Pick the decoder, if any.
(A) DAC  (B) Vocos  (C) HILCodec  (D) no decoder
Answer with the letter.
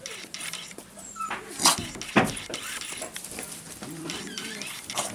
D